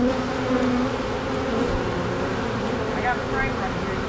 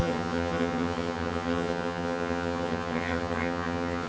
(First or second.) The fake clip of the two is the second